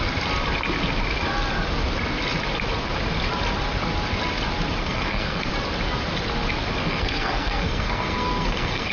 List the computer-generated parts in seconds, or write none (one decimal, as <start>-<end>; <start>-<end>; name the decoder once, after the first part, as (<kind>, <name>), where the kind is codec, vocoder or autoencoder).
4.8-5.5 (codec, SNAC); 6.8-8.9